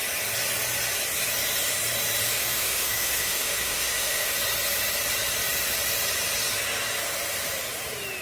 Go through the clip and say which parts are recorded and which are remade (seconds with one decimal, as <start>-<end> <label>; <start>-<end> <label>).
0.0-2.4 recorded; 2.4-4.3 remade; 4.3-8.2 recorded